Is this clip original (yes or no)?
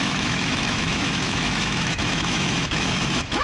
no